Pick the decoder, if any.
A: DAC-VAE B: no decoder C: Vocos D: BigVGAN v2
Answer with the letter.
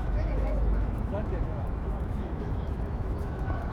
A